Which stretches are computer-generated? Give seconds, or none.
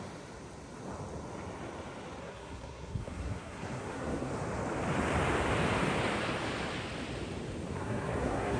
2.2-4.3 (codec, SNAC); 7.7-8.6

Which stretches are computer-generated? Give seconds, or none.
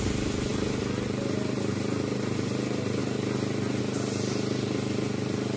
none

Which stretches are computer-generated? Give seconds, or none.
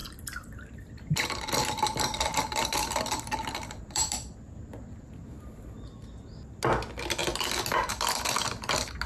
0.0-5.1 (vocoder, BigVGAN v2)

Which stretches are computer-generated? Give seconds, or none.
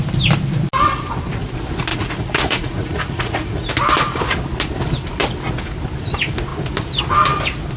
1.9-3.7 (vocoder, Vocos)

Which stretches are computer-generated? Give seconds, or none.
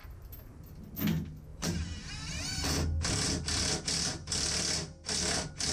1.5-2.1 (vocoder, BigVGAN v2)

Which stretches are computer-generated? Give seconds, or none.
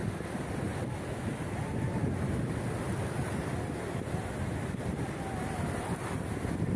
none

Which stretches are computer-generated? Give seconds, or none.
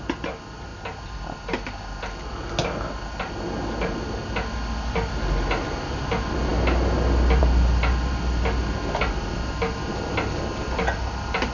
none